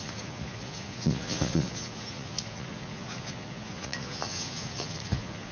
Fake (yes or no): yes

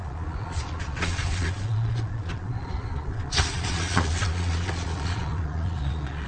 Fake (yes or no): yes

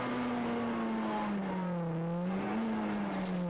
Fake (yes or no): no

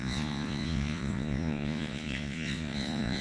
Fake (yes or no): yes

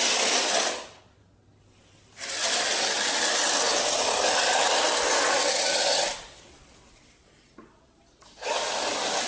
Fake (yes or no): no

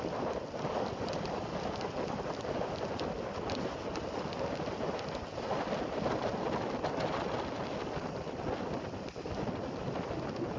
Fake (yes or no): no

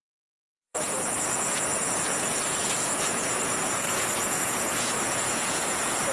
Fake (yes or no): yes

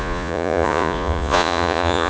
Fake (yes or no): yes